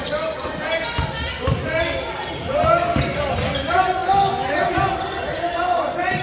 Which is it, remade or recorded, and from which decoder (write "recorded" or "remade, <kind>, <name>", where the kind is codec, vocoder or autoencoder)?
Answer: recorded